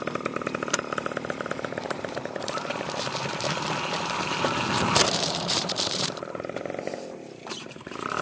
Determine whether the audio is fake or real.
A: fake